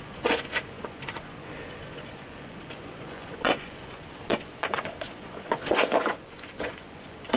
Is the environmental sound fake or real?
fake